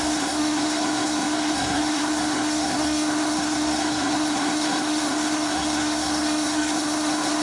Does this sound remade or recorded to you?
remade